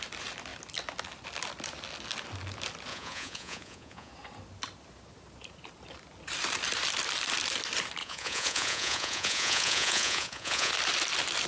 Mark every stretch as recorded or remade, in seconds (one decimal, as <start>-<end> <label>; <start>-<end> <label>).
0.0-2.9 recorded; 2.9-4.1 remade; 4.1-8.0 recorded; 8.0-10.7 remade; 10.7-11.5 recorded